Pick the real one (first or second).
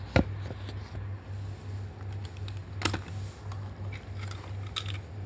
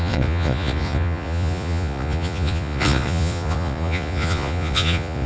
first